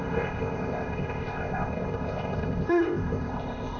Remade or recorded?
remade